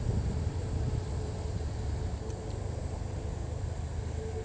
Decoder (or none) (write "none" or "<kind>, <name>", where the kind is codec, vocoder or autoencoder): none